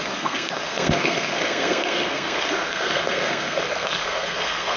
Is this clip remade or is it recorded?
remade